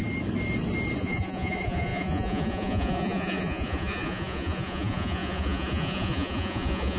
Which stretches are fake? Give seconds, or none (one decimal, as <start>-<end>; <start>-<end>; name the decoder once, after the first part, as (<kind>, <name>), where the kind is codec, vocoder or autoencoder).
1.0-7.0 (vocoder, Vocos)